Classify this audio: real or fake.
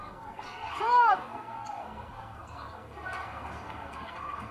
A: fake